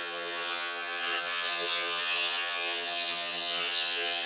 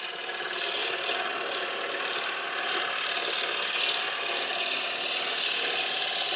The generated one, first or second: first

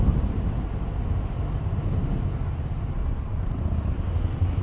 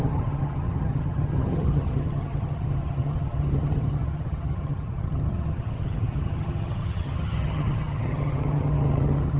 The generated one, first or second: second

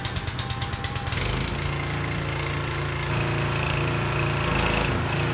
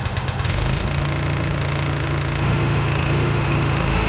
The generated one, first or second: second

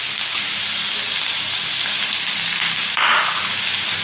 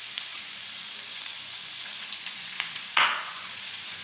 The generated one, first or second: second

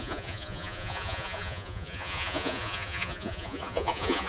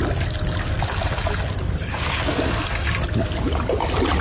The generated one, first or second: first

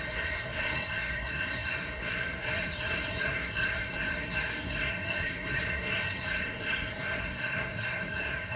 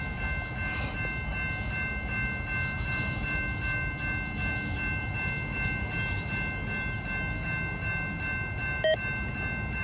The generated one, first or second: first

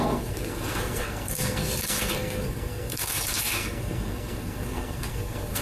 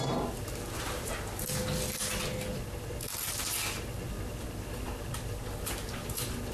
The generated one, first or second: first